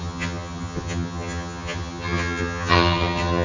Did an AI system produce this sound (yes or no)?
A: yes